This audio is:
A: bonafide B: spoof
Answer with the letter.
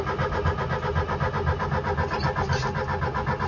A